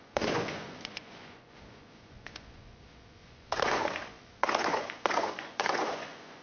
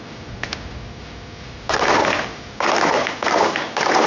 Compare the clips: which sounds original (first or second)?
second